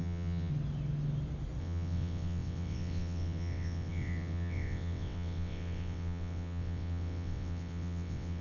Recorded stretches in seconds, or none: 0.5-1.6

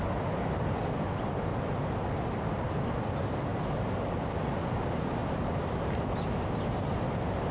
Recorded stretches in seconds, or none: 0.0-1.5; 2.7-3.5; 4.2-5.2

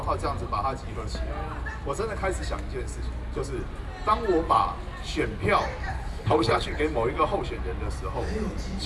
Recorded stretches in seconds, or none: 0.0-5.9; 6.8-8.9

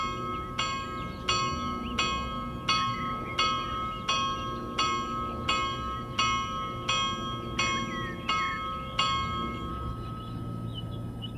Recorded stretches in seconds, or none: 0.0-9.7

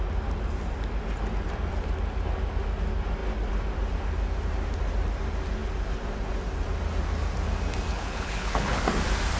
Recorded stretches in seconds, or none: 0.0-7.9; 8.8-9.4